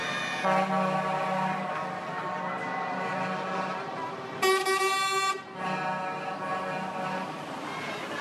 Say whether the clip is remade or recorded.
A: recorded